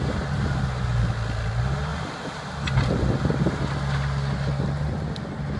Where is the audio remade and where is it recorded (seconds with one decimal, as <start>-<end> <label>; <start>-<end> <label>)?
0.0-5.6 recorded

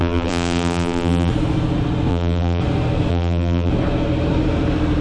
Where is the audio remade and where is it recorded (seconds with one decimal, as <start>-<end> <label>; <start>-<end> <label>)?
0.0-1.3 remade; 1.3-2.1 recorded; 2.1-2.6 remade; 2.6-3.1 recorded; 3.1-3.7 remade; 3.7-5.0 recorded

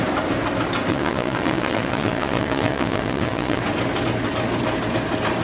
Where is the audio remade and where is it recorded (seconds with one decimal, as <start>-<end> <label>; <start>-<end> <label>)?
0.0-0.9 recorded; 0.9-3.6 remade; 3.6-5.4 recorded